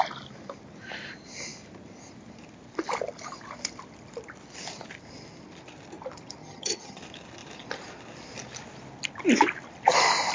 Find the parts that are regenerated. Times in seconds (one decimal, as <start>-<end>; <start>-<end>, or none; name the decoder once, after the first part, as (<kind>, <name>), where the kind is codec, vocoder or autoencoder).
6.4-7.0 (vocoder, HiFi-GAN)